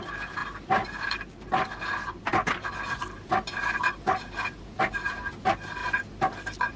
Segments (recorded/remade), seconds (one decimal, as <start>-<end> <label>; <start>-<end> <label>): 0.0-6.8 remade